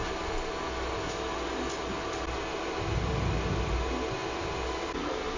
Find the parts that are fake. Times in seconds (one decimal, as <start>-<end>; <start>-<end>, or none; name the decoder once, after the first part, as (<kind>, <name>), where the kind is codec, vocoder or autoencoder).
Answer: none